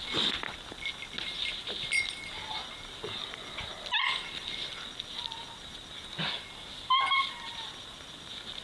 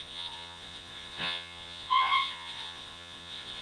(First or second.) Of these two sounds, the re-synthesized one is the second